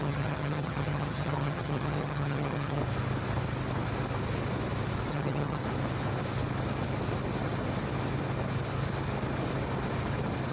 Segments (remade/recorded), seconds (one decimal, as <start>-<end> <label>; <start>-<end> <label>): 0.0-2.8 remade; 2.8-5.1 recorded; 5.1-5.6 remade; 5.6-10.5 recorded